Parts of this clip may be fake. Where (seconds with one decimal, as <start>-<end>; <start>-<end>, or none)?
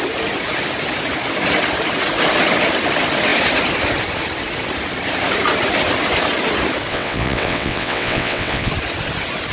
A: 6.9-8.7